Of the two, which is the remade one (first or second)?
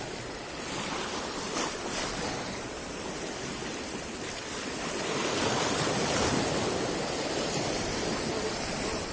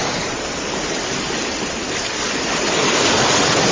first